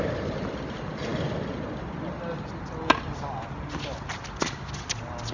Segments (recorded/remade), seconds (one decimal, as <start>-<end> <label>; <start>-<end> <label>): 0.0-5.3 recorded